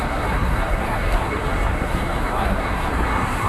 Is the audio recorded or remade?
remade